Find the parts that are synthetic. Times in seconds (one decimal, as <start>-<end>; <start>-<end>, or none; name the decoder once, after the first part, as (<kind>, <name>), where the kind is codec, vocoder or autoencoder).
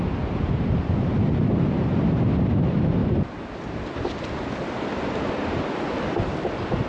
none